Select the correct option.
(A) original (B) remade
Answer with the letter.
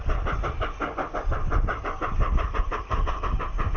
A